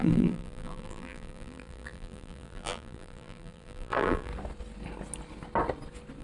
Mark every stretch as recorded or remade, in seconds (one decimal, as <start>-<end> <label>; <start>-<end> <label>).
0.0-4.3 remade; 4.3-6.2 recorded